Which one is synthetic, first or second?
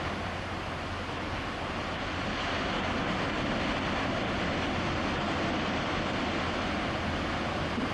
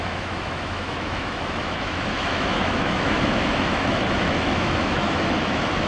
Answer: second